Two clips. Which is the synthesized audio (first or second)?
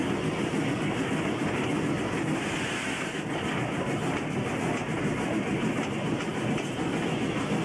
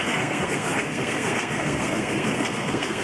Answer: second